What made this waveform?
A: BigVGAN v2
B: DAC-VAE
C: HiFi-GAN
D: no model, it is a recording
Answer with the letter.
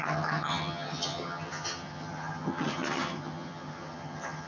C